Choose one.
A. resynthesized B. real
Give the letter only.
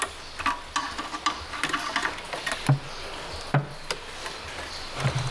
B